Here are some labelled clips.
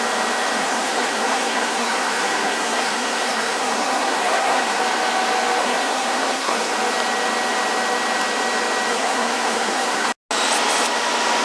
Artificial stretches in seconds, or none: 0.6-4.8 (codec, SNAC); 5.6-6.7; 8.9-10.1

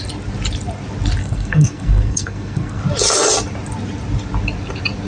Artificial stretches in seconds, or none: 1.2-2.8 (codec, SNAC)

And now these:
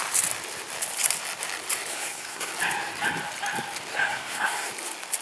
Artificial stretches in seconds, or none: 1.9-2.5 (codec, SNAC); 3.9-4.7

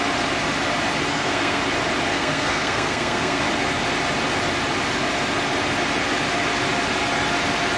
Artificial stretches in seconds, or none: 1.1-1.6 (codec, SNAC); 2.1-3.4

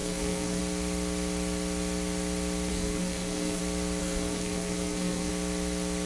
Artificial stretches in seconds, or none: 0.0-0.6 (codec, SNAC); 2.7-3.6; 4.0-5.3

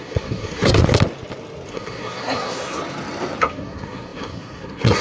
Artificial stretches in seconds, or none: 0.0-0.8 (codec, SNAC); 1.7-2.8; 3.4-5.0

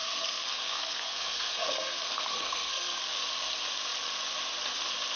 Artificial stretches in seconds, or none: 0.0-3.0 (codec, SNAC)